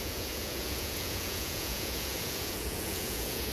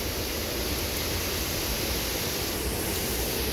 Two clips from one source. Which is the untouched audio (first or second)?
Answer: second